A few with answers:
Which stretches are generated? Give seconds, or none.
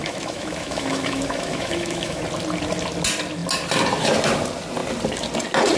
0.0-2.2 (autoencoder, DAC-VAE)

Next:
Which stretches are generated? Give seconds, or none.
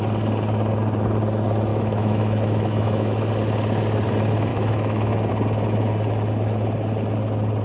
1.7-3.3 (autoencoder, DAC-VAE); 4.5-5.3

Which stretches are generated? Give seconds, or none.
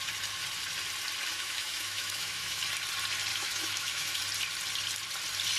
1.3-2.6 (autoencoder, DAC-VAE); 3.3-4.2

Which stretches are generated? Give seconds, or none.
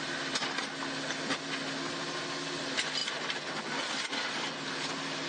none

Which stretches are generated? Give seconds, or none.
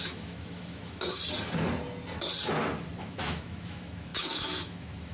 0.0-1.2 (autoencoder, DAC-VAE); 3.0-5.1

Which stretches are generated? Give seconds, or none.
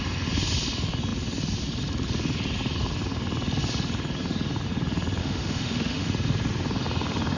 5.2-6.1 (autoencoder, DAC-VAE)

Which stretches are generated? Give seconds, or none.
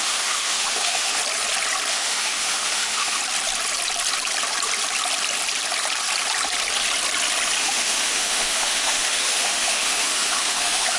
0.0-1.2 (autoencoder, DAC-VAE); 1.9-3.2; 7.6-11.0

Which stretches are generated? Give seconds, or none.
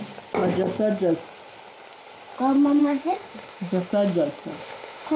2.8-3.9 (autoencoder, DAC-VAE); 4.5-5.2